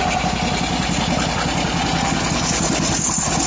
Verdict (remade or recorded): recorded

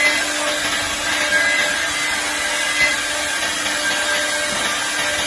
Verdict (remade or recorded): recorded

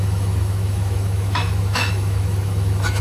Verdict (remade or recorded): remade